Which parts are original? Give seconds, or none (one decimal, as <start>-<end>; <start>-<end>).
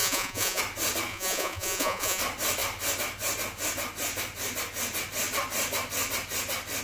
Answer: 0.6-1.1; 2.2-6.8